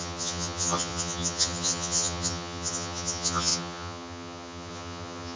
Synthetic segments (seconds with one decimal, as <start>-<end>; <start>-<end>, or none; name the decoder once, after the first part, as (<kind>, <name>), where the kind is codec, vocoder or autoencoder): 0.0-5.4 (vocoder, HiFi-GAN)